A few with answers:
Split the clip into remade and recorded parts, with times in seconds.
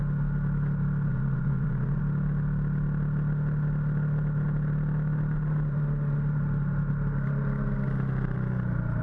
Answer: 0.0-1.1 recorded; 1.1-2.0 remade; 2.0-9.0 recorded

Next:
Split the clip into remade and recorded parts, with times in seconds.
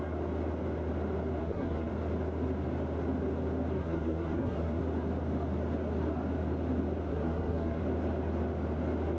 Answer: 0.0-1.4 recorded; 1.4-1.9 remade; 1.9-3.8 recorded; 3.8-4.8 remade; 4.8-7.1 recorded; 7.1-7.8 remade; 7.8-9.2 recorded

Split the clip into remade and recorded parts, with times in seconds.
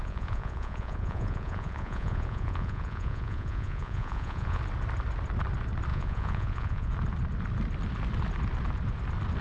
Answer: 0.0-4.6 remade; 4.6-5.9 recorded; 5.9-6.9 remade; 6.9-9.4 recorded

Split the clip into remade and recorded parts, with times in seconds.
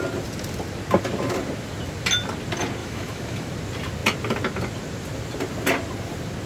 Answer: 0.0-2.8 recorded; 2.8-3.5 remade; 3.5-6.5 recorded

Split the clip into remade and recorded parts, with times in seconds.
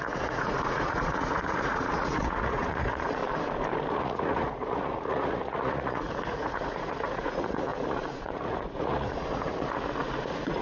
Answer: 0.0-3.2 remade; 3.2-3.9 recorded; 3.9-10.6 remade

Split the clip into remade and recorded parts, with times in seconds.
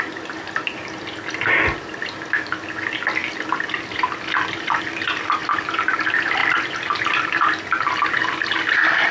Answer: 0.0-3.2 recorded; 3.2-4.8 remade; 4.8-6.4 recorded; 6.4-7.9 remade; 7.9-9.1 recorded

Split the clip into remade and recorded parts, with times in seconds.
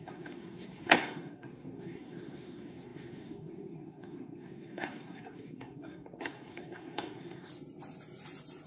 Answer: 0.0-7.5 remade; 7.5-8.7 recorded